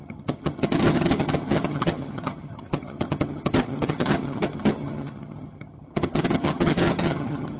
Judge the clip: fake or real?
fake